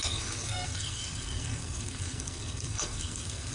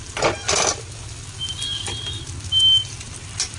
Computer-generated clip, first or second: first